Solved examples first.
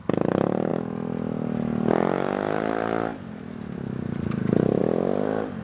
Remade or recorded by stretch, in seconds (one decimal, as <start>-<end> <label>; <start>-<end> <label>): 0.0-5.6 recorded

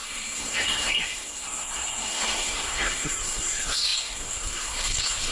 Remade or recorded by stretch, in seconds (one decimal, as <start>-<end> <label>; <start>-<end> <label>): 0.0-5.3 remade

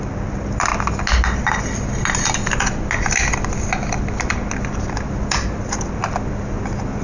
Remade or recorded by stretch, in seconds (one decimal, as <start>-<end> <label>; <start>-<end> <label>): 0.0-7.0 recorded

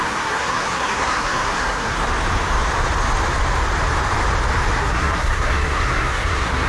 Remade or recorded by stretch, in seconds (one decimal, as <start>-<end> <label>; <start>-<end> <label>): 0.0-2.0 remade; 2.0-4.8 recorded; 4.8-6.7 remade

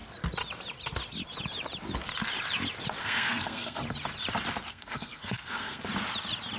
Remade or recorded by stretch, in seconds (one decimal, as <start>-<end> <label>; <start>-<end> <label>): 0.0-3.0 recorded; 3.0-3.8 remade; 3.8-4.7 recorded; 4.7-5.8 remade; 5.8-6.6 recorded